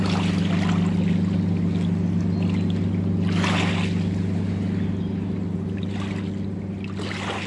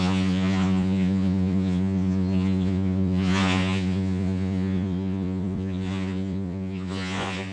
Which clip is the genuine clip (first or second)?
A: first